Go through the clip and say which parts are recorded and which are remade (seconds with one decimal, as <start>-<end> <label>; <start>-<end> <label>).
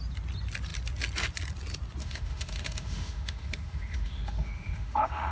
0.0-2.0 recorded; 2.0-5.3 remade